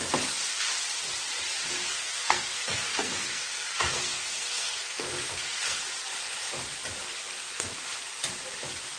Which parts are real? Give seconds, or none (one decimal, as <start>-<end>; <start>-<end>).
0.0-1.9; 5.8-7.1; 7.7-9.0